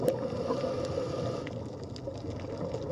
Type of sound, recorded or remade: recorded